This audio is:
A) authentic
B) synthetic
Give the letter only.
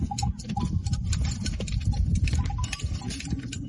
A